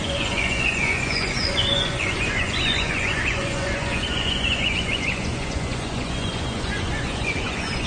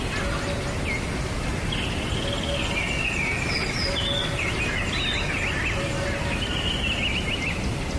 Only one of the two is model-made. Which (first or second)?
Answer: first